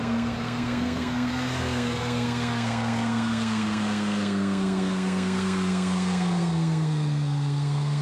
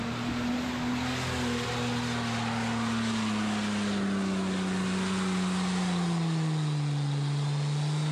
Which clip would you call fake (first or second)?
first